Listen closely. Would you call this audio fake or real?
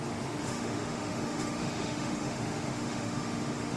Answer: fake